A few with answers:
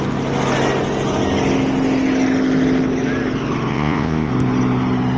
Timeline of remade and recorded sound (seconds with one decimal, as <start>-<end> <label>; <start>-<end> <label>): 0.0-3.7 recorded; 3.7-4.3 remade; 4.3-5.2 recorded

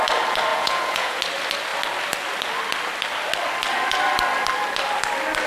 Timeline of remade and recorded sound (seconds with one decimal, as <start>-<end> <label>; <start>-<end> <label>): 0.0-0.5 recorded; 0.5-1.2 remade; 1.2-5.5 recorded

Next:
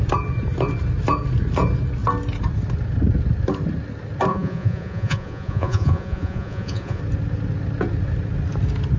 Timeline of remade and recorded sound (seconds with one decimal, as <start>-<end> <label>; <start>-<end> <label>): 0.0-4.3 recorded; 4.3-7.0 remade; 7.0-9.0 recorded